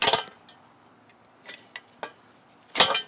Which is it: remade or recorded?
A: recorded